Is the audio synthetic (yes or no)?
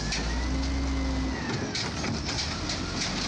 no